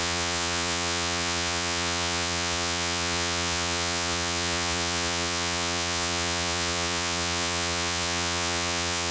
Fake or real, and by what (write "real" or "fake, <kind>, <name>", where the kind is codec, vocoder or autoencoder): fake, vocoder, Vocos